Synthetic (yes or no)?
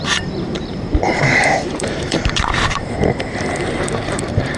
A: yes